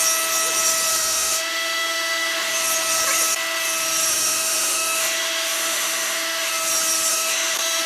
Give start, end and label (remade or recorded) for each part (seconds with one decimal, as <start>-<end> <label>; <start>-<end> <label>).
0.0-0.9 recorded; 0.9-2.5 remade; 2.5-4.1 recorded; 4.1-6.5 remade; 6.5-7.1 recorded; 7.1-7.9 remade